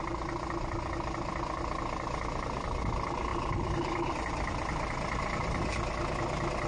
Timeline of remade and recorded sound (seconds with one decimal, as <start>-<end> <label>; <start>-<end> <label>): 0.0-6.7 recorded